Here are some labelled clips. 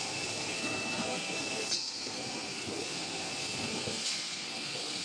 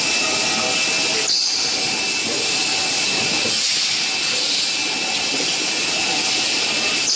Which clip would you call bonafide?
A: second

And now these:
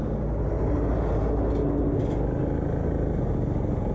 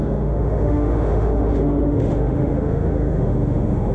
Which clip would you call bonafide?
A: first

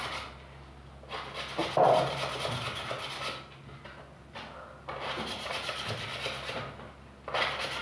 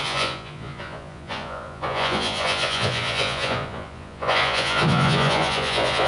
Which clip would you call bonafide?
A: first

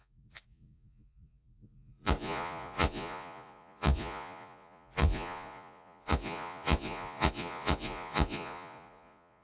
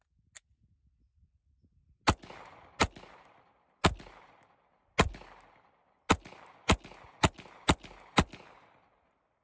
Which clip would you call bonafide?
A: second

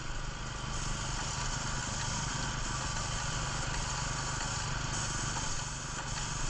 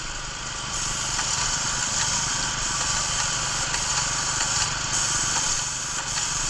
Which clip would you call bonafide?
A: first